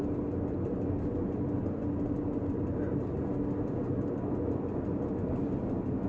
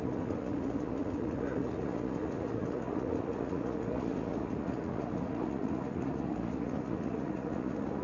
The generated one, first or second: second